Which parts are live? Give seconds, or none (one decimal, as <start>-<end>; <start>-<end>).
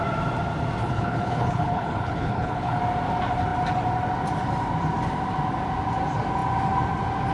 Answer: 0.0-0.8; 2.8-7.3